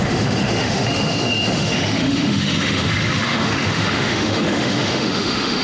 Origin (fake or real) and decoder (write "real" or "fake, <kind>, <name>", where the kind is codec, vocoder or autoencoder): fake, autoencoder, DAC-VAE